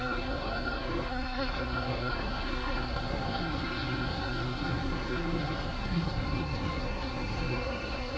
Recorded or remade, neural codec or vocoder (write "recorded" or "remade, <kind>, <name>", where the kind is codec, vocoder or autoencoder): remade, codec, SNAC